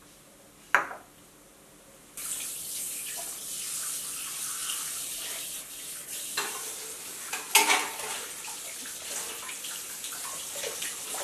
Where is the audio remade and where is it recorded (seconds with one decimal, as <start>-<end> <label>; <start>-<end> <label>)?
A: 0.0-11.2 recorded